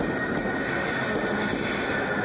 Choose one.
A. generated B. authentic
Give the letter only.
B